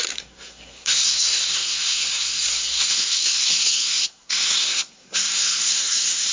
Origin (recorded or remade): remade